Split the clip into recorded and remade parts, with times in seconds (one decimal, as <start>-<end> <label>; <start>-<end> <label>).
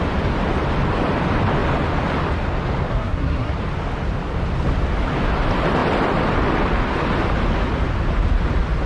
0.0-2.9 recorded; 2.9-3.5 remade; 3.5-8.9 recorded